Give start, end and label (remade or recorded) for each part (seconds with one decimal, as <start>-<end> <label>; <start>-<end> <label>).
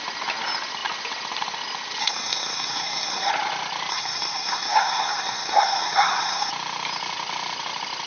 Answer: 0.0-2.0 recorded; 2.0-3.3 remade; 3.3-3.9 recorded; 3.9-6.5 remade; 6.5-8.1 recorded